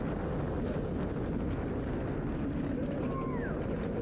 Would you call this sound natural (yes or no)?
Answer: yes